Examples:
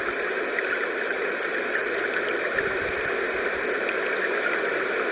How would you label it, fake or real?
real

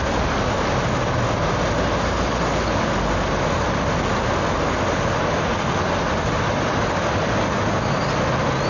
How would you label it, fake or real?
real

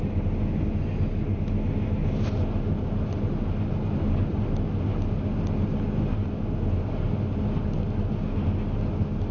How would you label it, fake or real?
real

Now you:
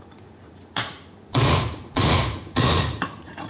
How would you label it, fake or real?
fake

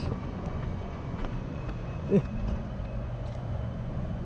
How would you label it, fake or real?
fake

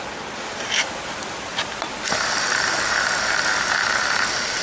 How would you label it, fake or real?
real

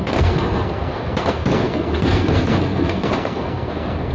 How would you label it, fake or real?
fake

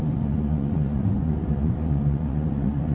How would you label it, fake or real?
fake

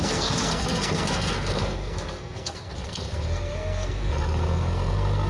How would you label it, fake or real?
fake